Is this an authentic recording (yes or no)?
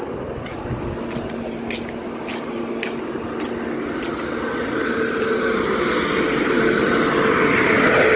yes